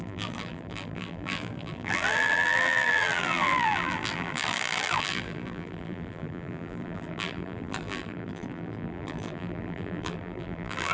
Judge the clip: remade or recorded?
remade